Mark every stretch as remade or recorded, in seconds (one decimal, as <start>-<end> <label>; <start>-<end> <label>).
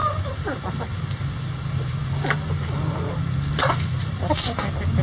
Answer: 0.0-5.0 recorded